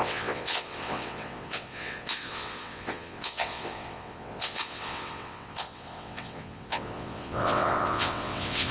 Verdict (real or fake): fake